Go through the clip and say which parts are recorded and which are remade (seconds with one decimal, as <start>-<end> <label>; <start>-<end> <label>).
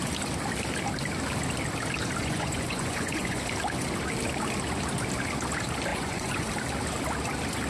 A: 0.0-2.2 recorded; 2.2-3.4 remade; 3.4-5.9 recorded; 5.9-6.5 remade; 6.5-7.7 recorded